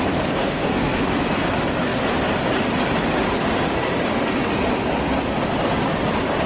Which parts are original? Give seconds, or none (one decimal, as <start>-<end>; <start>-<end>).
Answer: 0.0-0.4; 1.0-6.5

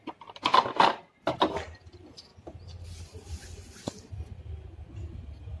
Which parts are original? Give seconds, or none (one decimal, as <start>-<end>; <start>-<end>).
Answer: 0.0-5.6

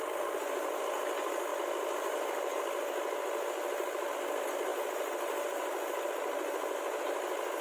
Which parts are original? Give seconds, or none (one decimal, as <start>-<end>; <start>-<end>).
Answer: 0.0-7.6

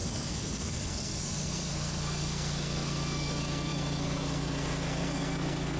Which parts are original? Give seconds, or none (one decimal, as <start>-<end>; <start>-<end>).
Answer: none

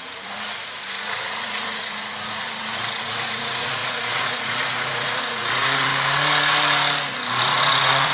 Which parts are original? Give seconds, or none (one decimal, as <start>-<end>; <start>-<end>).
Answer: 5.9-7.4

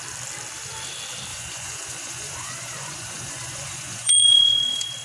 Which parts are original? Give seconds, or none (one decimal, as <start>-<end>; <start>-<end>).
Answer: 0.0-1.3; 4.3-5.0

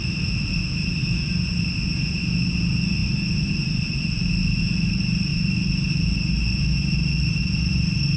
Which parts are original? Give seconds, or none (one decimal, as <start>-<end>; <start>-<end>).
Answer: 0.0-8.2